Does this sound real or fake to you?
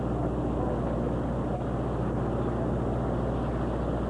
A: real